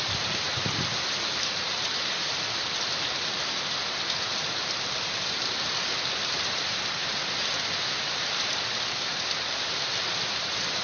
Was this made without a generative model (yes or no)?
yes